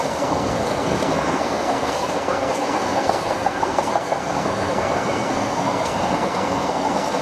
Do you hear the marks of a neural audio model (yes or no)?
yes